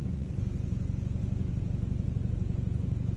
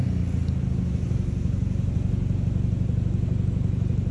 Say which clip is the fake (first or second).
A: first